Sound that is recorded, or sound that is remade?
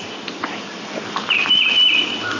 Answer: recorded